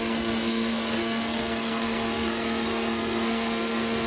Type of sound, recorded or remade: remade